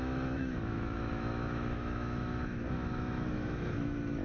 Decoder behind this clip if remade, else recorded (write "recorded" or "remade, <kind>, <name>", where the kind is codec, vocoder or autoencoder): remade, autoencoder, DAC-VAE